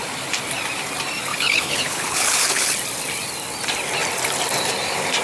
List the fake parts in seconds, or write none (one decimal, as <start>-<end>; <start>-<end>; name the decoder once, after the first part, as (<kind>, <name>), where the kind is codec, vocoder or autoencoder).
1.3-2.7 (codec, HILCodec)

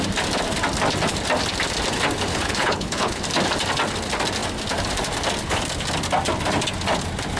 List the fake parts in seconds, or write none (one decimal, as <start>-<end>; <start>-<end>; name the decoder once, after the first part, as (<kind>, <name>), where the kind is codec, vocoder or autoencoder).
2.3-3.2 (codec, HILCodec)

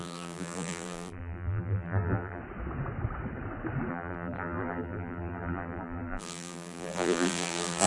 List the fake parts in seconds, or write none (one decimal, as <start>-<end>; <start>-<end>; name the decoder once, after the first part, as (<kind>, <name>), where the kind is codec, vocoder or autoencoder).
0.0-2.4 (vocoder, BigVGAN v2); 3.9-7.9

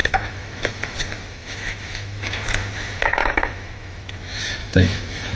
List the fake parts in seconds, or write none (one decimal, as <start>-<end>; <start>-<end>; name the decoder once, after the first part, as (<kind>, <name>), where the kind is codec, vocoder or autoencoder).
0.0-2.3 (autoencoder, DAC-VAE); 3.2-4.1; 4.6-5.4